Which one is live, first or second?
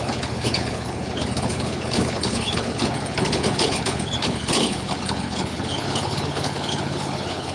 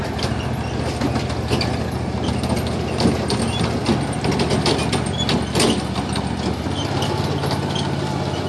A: second